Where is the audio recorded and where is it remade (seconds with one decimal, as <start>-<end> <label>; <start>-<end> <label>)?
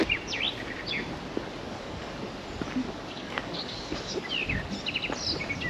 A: 0.0-1.6 recorded; 1.6-2.2 remade; 2.2-2.8 recorded; 2.8-4.3 remade; 4.3-5.7 recorded